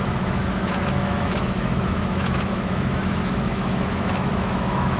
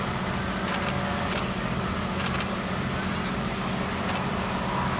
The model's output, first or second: first